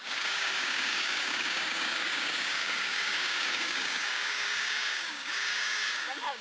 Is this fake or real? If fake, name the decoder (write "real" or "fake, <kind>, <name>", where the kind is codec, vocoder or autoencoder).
fake, codec, DAC